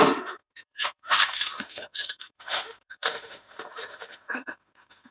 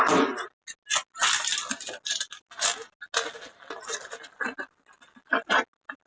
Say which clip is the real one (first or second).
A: second